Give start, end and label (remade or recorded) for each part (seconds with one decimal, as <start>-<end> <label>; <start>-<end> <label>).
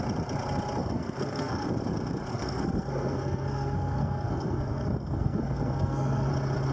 0.0-0.8 recorded; 0.8-1.7 remade; 1.7-2.3 recorded; 2.3-6.3 remade; 6.3-6.7 recorded